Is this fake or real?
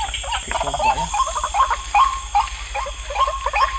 real